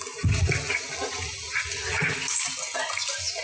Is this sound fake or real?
real